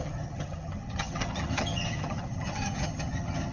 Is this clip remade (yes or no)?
yes